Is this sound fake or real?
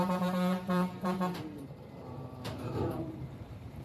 fake